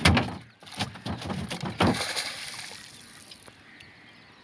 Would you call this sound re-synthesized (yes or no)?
no